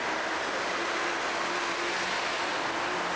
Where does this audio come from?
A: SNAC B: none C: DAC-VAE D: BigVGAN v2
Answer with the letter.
B